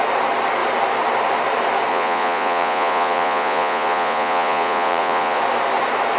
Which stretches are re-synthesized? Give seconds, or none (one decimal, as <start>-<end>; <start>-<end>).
1.9-5.4